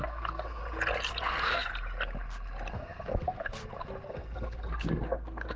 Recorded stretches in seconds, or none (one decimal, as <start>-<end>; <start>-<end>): 0.6-1.2; 1.7-2.7; 3.6-4.1